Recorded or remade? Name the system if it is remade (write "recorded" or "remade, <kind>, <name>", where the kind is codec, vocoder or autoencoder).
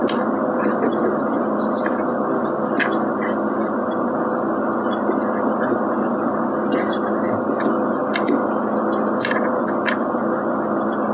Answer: recorded